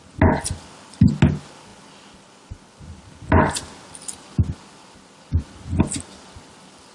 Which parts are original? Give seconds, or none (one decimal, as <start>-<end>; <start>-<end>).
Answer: 0.0-6.9